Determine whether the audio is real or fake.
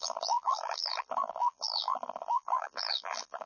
fake